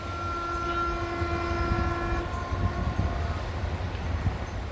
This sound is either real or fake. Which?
real